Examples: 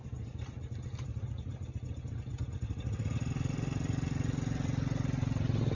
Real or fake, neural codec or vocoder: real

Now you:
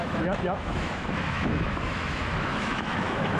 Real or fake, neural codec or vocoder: fake, autoencoder, DAC-VAE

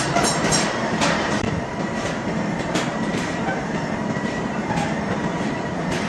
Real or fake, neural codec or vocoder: fake, vocoder, BigVGAN v2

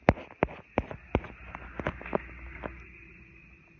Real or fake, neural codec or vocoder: real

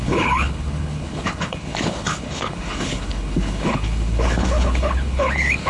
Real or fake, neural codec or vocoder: fake, codec, HILCodec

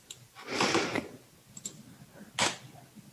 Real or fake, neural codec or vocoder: real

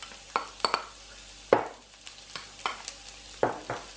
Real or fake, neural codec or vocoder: real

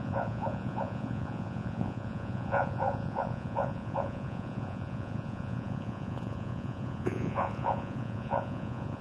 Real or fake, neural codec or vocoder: fake, vocoder, Vocos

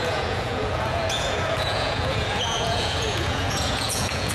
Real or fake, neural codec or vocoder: fake, vocoder, Vocos